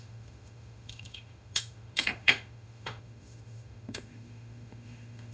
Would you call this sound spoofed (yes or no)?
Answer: yes